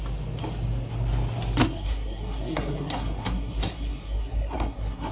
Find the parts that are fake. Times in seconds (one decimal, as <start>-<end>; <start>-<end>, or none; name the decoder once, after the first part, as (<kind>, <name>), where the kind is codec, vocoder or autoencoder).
1.6-5.1 (codec, SNAC)